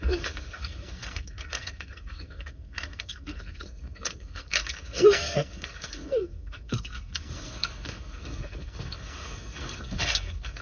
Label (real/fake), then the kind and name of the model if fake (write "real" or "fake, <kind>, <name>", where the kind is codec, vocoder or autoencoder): fake, codec, SNAC